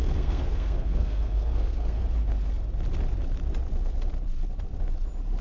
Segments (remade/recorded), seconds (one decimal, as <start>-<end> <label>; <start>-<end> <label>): 0.0-2.0 remade; 2.0-5.4 recorded